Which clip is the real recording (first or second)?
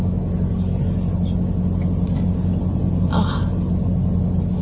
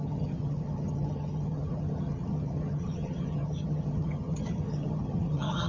first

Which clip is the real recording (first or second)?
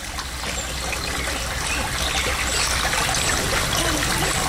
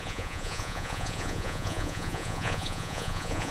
first